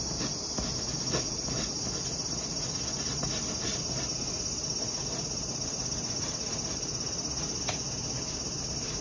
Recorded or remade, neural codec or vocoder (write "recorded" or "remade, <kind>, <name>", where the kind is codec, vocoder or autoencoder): recorded